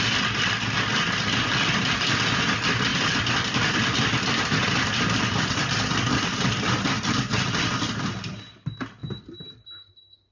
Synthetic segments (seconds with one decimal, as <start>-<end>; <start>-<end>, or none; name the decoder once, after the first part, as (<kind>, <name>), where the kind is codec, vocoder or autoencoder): 2.9-5.4 (vocoder, BigVGAN v2)